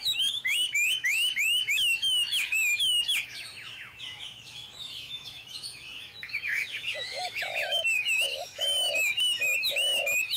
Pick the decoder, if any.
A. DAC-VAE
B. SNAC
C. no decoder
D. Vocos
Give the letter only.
A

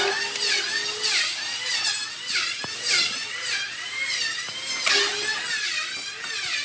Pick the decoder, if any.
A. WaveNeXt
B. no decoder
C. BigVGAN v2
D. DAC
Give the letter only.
B